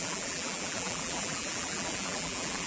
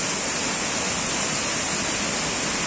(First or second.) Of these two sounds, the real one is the second